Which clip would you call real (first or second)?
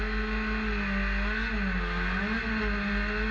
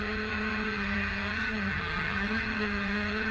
first